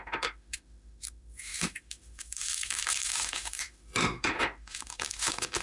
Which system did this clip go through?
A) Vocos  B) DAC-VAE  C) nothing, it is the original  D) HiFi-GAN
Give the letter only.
B